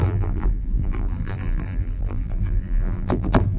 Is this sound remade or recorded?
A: remade